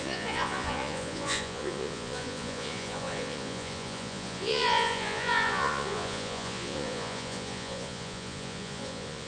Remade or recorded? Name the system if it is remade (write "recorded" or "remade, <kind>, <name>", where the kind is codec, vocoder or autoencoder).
remade, vocoder, Vocos